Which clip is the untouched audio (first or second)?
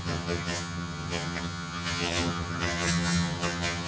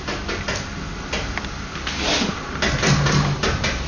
second